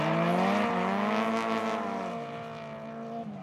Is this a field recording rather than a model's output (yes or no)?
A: yes